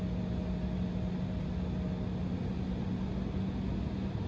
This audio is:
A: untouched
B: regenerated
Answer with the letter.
A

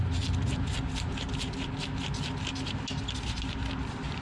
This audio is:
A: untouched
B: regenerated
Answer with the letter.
A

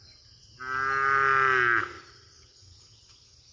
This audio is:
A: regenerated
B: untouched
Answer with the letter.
B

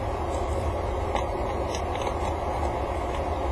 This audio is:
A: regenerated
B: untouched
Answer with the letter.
B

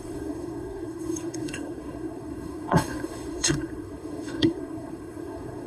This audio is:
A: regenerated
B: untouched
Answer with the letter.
A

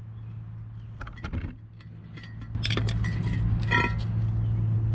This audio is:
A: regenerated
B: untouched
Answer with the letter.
B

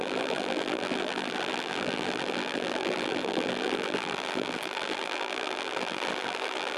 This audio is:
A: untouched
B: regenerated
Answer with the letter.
B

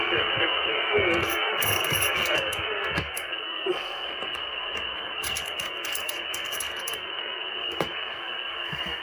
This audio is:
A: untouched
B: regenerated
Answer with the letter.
B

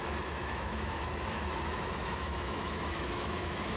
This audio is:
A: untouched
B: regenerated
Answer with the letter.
B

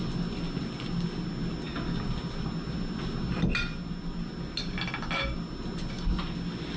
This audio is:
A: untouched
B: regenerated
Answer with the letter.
A